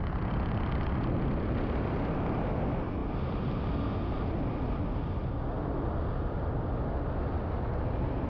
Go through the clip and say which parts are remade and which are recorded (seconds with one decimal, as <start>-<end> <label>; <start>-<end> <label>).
0.0-8.3 recorded